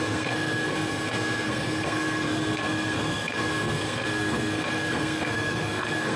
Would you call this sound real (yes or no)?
no